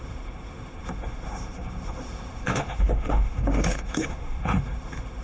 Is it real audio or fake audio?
fake